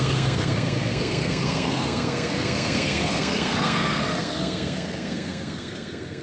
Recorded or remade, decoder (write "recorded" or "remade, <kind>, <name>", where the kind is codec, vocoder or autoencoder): remade, codec, SNAC